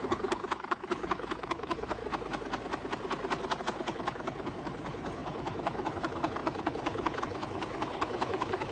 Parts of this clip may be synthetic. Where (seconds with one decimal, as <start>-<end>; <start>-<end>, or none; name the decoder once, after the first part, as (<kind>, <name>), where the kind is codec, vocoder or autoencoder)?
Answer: 0.0-2.0 (codec, HILCodec); 3.6-8.7